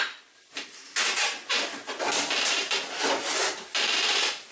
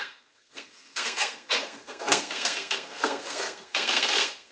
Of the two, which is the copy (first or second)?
second